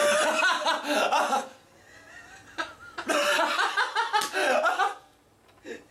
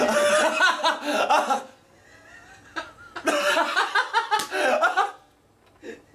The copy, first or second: first